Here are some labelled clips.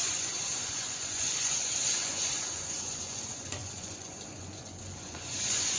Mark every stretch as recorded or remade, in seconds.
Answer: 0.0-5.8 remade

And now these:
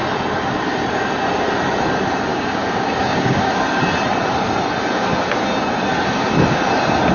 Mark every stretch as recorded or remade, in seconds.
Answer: 0.0-2.3 recorded; 2.3-3.5 remade; 3.5-7.1 recorded

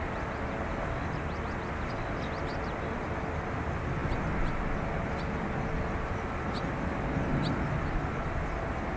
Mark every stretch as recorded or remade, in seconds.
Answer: 0.0-9.0 recorded

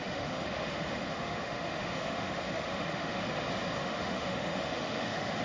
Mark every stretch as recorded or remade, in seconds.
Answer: 0.0-3.2 remade; 3.2-3.8 recorded; 3.8-5.4 remade

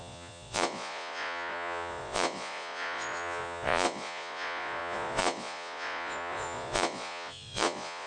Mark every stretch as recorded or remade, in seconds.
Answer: 0.0-8.1 remade

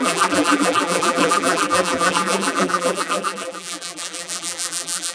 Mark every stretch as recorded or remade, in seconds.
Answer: 0.0-5.1 remade

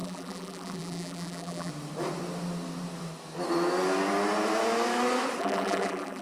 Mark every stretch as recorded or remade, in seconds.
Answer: 0.0-1.7 remade; 1.7-5.4 recorded; 5.4-6.2 remade

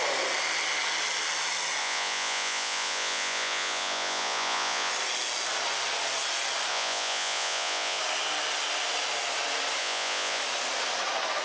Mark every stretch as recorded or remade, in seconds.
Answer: 0.0-1.8 recorded; 1.8-4.9 remade; 4.9-6.7 recorded; 6.7-8.0 remade; 8.0-9.8 recorded; 9.8-10.4 remade; 10.4-11.4 recorded